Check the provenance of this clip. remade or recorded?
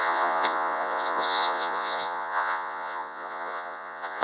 remade